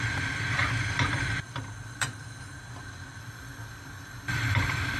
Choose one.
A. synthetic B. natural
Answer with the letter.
A